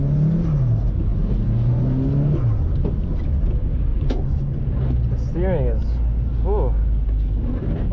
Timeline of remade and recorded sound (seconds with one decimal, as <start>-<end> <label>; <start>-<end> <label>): 0.0-3.9 recorded; 3.9-4.6 remade; 4.6-7.9 recorded